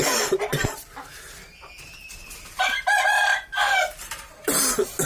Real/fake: real